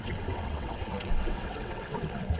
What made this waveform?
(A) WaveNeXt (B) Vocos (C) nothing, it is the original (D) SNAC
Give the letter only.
A